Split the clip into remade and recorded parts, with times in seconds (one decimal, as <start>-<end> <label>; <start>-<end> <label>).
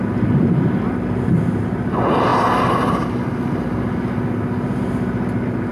0.0-5.7 recorded